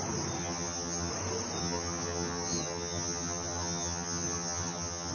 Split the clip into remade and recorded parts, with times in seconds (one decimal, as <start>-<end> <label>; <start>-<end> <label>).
0.0-0.4 recorded; 0.4-1.1 remade; 1.1-1.6 recorded; 1.6-5.1 remade